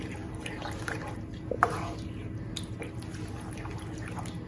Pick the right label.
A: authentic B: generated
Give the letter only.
A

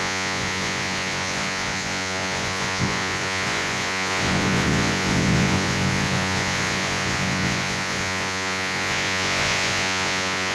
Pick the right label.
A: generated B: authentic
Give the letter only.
A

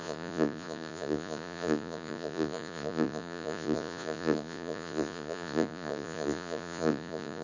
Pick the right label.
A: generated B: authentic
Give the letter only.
A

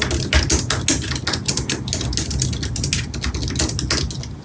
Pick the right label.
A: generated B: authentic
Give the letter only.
B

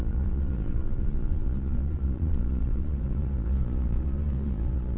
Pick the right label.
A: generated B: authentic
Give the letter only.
A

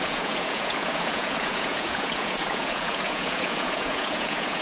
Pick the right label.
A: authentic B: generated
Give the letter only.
B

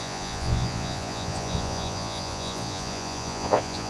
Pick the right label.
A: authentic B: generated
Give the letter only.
B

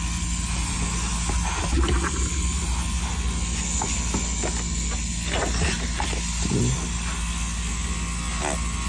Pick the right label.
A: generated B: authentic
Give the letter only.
B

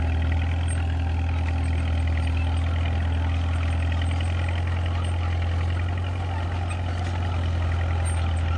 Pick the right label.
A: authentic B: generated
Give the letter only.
A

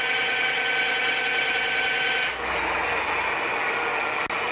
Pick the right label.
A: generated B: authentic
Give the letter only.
B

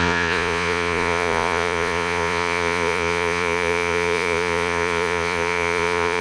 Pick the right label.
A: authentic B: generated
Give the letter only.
B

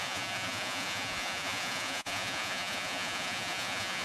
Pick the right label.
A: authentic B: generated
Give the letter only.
B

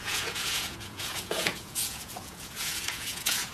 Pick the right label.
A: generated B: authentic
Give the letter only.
A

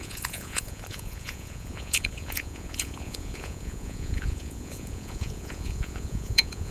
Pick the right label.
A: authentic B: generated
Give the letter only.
B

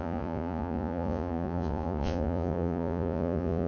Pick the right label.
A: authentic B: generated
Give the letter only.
B